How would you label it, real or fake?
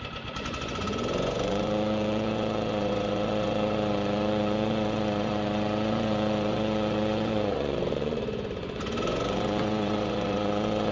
fake